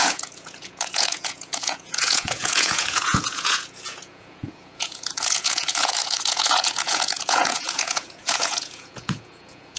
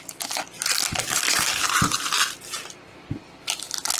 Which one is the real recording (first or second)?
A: second